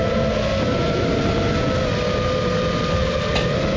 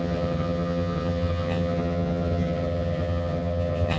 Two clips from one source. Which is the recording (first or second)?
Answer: first